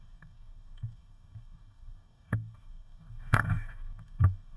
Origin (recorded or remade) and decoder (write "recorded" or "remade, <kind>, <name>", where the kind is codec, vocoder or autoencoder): remade, codec, DAC